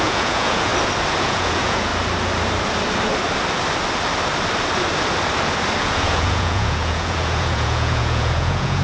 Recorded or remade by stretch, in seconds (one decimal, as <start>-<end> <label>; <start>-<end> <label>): 0.0-0.7 remade; 0.7-1.2 recorded; 1.2-1.9 remade; 1.9-5.8 recorded; 5.8-8.8 remade